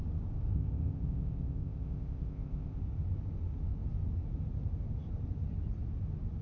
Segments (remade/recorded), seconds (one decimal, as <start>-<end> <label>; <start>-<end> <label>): 0.0-0.5 recorded; 0.5-2.8 remade; 2.8-6.4 recorded